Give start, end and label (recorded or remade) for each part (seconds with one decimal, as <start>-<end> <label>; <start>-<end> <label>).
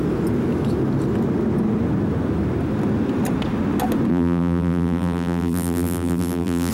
0.0-4.1 recorded; 4.1-6.7 remade